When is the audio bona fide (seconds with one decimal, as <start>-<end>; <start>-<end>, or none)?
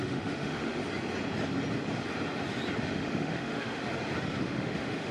0.8-2.8; 3.8-4.4